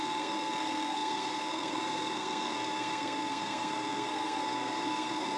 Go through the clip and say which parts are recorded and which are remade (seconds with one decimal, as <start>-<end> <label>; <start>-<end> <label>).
0.0-5.4 remade